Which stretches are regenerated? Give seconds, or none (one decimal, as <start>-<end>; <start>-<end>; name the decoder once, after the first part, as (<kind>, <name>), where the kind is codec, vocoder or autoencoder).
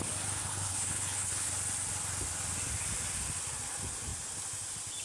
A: 0.4-1.5 (codec, HILCodec)